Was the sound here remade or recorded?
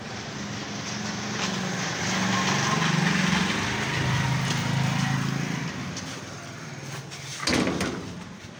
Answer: recorded